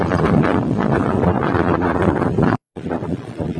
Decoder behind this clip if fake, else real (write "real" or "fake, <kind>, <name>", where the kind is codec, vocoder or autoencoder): fake, vocoder, Vocos